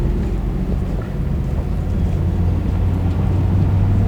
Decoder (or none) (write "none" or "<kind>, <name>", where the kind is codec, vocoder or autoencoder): none